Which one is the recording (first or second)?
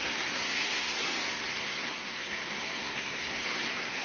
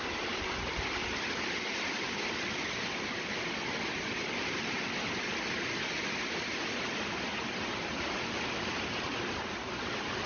second